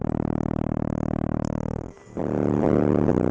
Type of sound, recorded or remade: remade